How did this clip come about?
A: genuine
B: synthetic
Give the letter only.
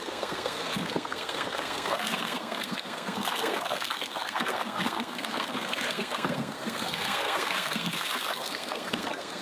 B